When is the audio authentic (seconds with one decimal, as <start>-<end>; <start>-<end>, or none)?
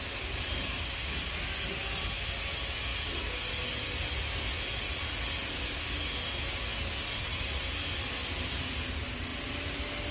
0.0-10.1